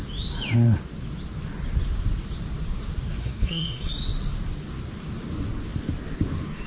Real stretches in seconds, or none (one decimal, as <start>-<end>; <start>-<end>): 0.0-3.2; 3.9-6.7